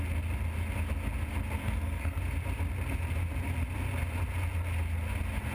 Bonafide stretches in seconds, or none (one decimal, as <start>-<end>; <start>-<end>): 0.0-1.6; 2.2-5.5